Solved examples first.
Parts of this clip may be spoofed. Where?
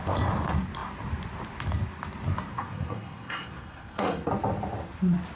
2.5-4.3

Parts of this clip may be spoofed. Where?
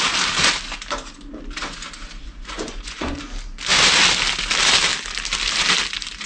2.2-3.1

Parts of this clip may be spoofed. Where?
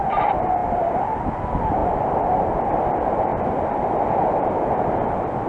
0.6-1.2; 1.8-2.4